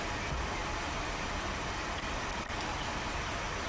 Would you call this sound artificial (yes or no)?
no